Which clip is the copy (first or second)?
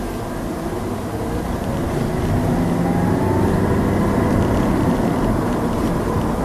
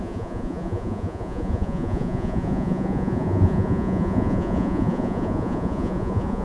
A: second